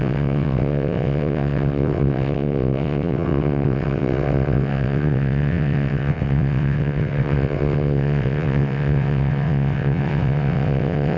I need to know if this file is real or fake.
fake